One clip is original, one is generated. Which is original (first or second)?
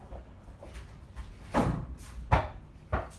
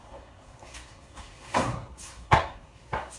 first